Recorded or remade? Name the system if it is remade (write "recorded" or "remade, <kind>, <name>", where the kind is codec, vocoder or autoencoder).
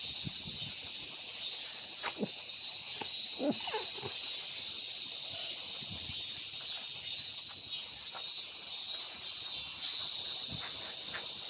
recorded